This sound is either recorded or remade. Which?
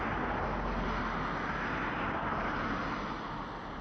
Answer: recorded